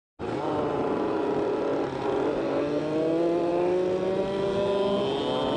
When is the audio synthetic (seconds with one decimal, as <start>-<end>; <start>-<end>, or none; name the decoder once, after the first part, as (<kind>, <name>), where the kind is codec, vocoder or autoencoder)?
none